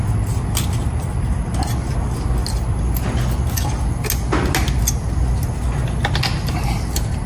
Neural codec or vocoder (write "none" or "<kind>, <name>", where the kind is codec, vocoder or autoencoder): none